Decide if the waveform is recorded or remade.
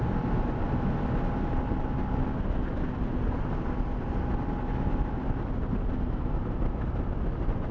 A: recorded